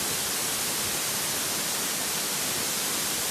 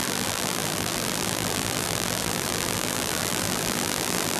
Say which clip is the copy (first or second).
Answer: second